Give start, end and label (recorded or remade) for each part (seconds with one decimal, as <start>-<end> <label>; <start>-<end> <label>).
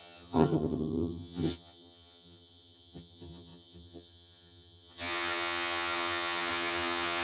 0.0-7.2 remade